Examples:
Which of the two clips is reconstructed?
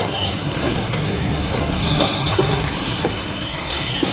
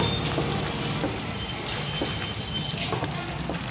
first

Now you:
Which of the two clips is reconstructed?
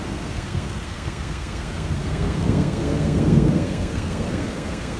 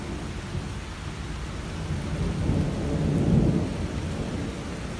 first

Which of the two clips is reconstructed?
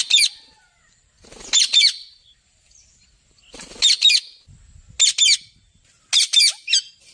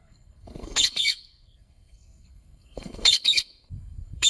second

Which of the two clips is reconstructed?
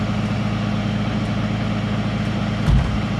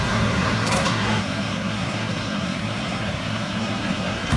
second